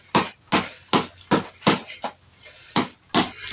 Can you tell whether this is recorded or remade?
recorded